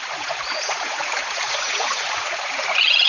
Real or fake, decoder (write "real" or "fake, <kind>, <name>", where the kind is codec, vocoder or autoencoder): fake, vocoder, Vocos